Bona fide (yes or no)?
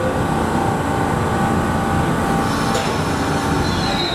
yes